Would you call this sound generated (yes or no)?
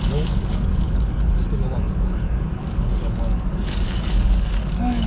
yes